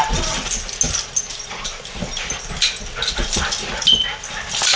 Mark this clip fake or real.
real